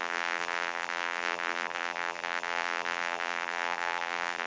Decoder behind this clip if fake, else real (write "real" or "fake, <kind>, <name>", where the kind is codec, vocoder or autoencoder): fake, vocoder, BigVGAN v2